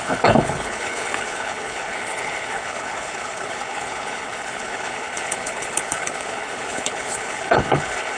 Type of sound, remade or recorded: remade